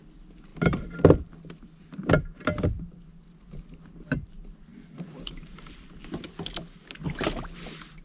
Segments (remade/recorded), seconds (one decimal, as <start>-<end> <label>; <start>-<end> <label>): 0.0-4.7 recorded; 4.7-6.0 remade; 6.0-8.0 recorded